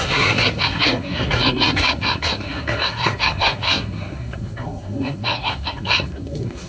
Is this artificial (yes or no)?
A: yes